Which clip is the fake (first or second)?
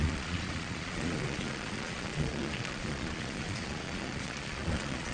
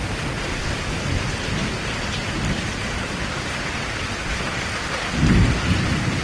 first